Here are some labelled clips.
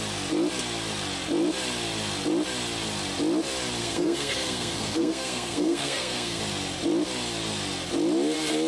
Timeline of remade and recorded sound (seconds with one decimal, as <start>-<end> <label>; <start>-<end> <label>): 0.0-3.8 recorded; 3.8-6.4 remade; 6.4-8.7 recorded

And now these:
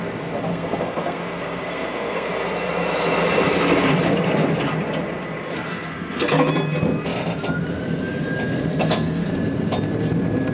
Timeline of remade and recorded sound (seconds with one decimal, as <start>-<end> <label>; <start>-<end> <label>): 0.0-0.5 recorded; 0.5-2.3 remade; 2.3-5.7 recorded; 5.7-6.5 remade; 6.5-8.7 recorded; 8.7-9.3 remade; 9.3-10.5 recorded

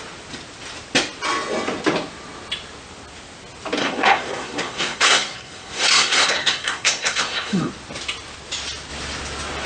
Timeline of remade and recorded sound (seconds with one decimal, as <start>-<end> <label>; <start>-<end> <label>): 0.0-3.8 recorded; 3.8-7.7 remade; 7.7-9.7 recorded

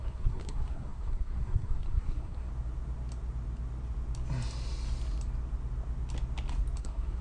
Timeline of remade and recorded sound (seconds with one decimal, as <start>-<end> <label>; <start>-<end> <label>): 0.0-2.5 remade; 2.5-6.8 recorded; 6.8-7.2 remade

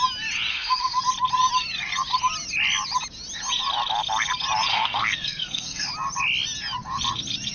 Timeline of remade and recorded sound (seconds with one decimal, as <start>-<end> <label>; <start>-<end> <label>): 0.0-0.5 recorded; 0.5-1.0 remade; 1.0-4.7 recorded; 4.7-5.9 remade; 5.9-7.5 recorded